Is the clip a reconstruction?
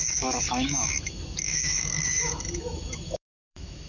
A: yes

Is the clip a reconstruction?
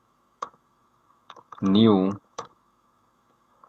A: yes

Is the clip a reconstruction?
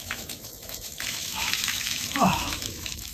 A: yes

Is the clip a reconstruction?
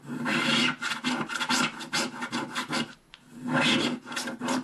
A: no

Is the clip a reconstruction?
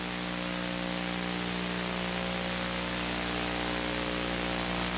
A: no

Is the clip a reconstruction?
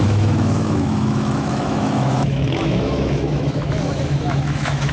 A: yes